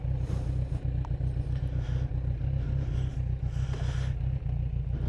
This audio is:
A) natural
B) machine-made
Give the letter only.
A